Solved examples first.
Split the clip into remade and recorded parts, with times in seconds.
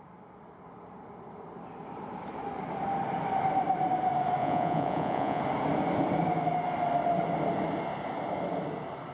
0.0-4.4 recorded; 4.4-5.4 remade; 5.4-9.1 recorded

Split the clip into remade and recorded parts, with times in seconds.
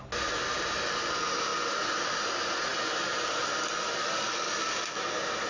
0.0-4.0 recorded; 4.0-4.5 remade; 4.5-5.5 recorded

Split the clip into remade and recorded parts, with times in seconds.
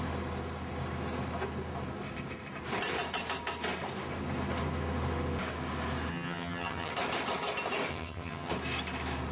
0.0-6.1 recorded; 6.1-6.9 remade; 6.9-7.9 recorded; 7.9-8.5 remade; 8.5-9.3 recorded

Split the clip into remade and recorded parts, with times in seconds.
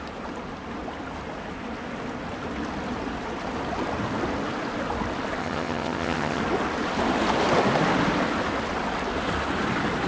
0.0-5.4 recorded; 5.4-6.4 remade; 6.4-10.1 recorded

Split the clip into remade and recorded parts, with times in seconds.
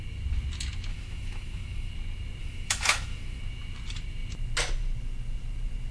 0.0-0.9 recorded; 0.9-1.9 remade; 1.9-2.4 recorded; 2.4-3.4 remade; 3.4-5.9 recorded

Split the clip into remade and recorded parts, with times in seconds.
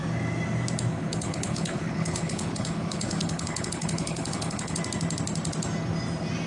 0.0-0.9 recorded; 0.9-4.8 remade; 4.8-6.5 recorded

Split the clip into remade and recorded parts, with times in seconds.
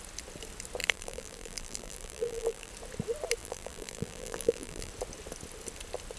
0.0-0.8 recorded; 0.8-2.7 remade; 2.7-3.4 recorded; 3.4-4.9 remade; 4.9-6.2 recorded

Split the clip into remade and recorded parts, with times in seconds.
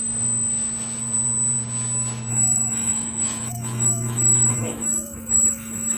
0.0-2.3 recorded; 2.3-6.0 remade